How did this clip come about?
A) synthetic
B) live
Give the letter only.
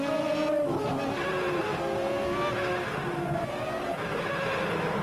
B